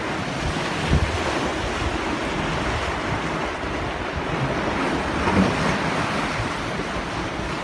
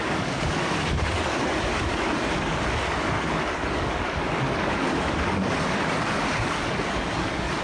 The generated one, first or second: second